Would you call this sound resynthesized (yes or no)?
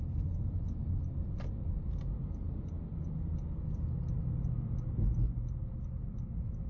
no